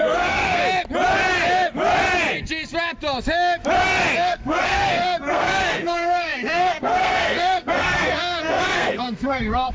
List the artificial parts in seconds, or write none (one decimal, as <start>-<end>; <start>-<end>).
0.0-0.6; 4.2-9.7